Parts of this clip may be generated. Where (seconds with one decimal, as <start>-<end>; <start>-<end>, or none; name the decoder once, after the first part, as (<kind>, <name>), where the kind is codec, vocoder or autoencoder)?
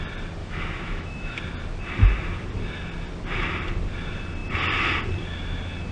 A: 0.4-1.4 (autoencoder, DAC-VAE)